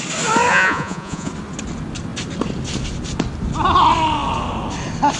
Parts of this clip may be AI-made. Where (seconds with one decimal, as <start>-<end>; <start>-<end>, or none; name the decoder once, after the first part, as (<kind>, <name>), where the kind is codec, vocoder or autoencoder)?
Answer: 0.5-1.3 (vocoder, Vocos)